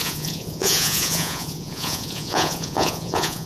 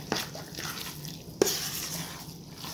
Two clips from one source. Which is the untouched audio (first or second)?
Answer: second